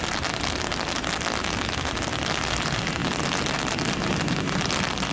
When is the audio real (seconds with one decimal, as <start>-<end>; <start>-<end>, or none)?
0.0-1.4; 1.9-5.1